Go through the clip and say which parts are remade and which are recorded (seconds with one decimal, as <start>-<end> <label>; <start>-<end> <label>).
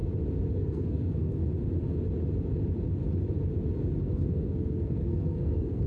0.0-0.5 recorded; 0.5-1.4 remade; 1.4-4.0 recorded; 4.0-5.9 remade